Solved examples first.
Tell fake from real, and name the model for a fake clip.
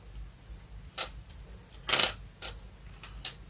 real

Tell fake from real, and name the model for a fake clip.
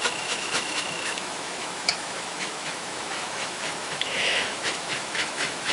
fake, autoencoder, DAC-VAE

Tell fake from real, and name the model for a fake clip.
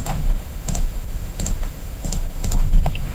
fake, autoencoder, DAC-VAE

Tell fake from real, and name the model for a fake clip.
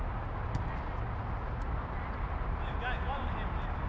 real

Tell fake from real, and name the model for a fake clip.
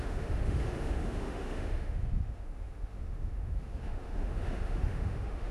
fake, autoencoder, DAC-VAE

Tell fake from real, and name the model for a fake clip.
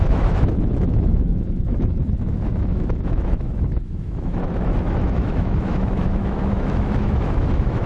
fake, autoencoder, DAC-VAE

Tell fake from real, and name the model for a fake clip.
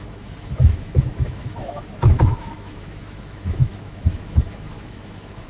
fake, autoencoder, DAC-VAE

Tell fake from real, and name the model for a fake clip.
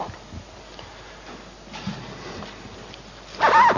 real